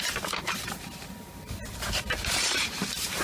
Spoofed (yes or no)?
yes